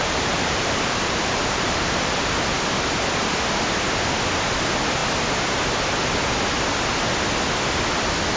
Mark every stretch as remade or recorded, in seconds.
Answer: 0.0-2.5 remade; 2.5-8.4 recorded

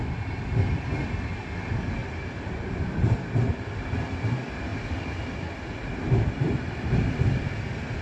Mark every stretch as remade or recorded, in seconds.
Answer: 0.0-2.0 recorded; 2.0-3.4 remade; 3.4-4.7 recorded; 4.7-7.5 remade; 7.5-8.0 recorded

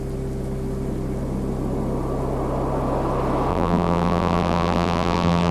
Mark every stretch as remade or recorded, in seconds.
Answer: 0.0-3.5 recorded; 3.5-5.5 remade

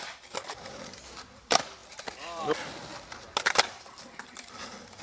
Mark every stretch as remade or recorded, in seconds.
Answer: 0.0-2.9 remade; 2.9-3.5 recorded; 3.5-5.0 remade

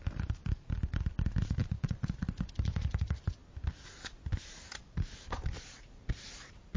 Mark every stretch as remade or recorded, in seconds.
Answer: 0.0-3.4 remade; 3.4-4.8 recorded; 4.8-6.8 remade

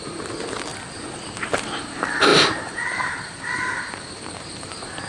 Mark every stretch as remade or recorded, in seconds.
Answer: 0.0-0.7 remade; 0.7-1.8 recorded; 1.8-5.1 remade

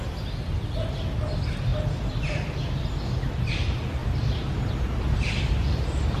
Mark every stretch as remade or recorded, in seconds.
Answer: 0.0-6.2 recorded